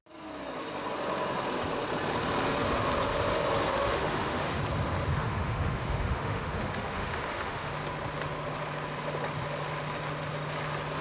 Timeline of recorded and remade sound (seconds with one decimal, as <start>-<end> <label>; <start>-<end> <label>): 0.0-3.7 recorded; 3.7-4.6 remade; 4.6-5.1 recorded; 5.1-7.7 remade; 7.7-11.0 recorded